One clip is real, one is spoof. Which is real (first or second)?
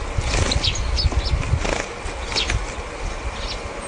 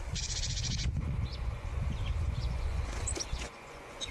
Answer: first